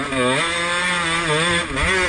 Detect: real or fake real